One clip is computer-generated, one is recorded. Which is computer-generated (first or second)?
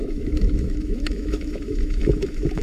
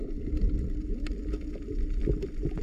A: first